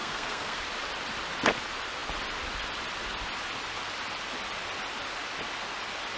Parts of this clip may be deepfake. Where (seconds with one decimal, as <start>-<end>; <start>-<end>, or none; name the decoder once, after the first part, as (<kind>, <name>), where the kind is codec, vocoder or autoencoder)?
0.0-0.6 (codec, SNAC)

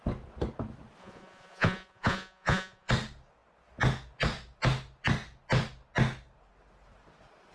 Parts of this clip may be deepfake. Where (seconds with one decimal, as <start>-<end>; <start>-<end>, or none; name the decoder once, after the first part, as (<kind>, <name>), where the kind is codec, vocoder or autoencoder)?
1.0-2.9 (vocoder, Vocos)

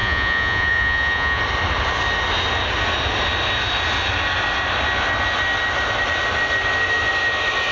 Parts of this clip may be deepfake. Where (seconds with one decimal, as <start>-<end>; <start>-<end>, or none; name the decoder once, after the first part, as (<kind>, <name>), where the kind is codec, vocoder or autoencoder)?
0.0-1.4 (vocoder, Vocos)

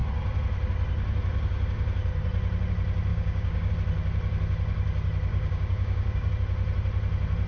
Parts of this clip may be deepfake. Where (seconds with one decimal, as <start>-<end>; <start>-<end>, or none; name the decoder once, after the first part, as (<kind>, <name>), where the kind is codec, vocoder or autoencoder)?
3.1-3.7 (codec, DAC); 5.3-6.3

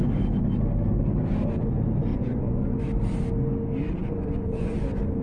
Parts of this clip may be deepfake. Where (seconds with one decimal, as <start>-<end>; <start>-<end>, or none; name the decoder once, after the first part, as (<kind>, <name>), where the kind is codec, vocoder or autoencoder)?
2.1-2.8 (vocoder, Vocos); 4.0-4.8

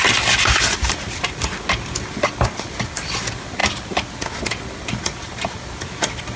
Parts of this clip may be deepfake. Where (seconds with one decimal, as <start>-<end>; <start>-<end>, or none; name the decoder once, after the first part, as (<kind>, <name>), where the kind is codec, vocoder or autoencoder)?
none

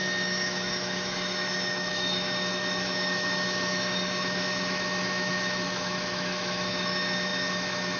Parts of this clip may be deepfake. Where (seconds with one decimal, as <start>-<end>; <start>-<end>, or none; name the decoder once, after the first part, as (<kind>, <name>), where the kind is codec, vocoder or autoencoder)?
0.0-8.0 (autoencoder, DAC-VAE)

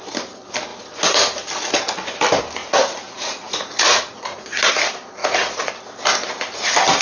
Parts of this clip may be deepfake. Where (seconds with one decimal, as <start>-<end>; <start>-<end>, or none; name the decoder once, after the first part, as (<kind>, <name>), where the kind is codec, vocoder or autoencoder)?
2.6-4.7 (vocoder, Vocos); 5.2-5.7